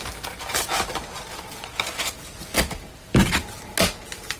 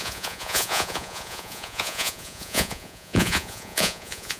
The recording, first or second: first